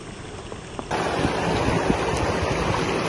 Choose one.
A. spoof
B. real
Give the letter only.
B